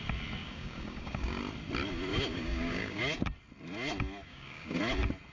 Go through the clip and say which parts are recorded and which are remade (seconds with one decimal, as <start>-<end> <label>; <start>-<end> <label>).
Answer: 0.0-0.4 recorded; 0.4-1.4 remade; 1.4-2.1 recorded; 2.1-3.0 remade; 3.0-4.3 recorded; 4.3-4.8 remade; 4.8-5.3 recorded